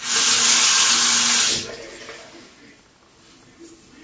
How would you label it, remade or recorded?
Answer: recorded